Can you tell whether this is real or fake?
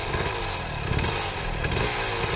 fake